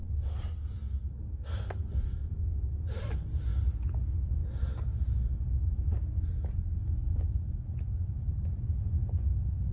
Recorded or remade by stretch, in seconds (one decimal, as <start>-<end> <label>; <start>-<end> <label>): 0.0-1.2 remade; 1.2-2.2 recorded; 2.2-3.1 remade; 3.1-3.5 recorded; 3.5-4.4 remade; 4.4-9.7 recorded